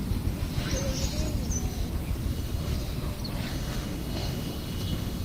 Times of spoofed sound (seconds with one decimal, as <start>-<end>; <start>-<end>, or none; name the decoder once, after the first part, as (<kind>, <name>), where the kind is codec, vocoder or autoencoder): 2.3-2.7 (autoencoder, DAC-VAE); 3.5-5.2